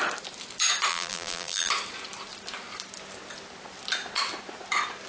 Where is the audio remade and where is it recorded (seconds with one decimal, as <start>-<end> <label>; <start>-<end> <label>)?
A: 0.0-0.9 recorded; 0.9-1.7 remade; 1.7-5.1 recorded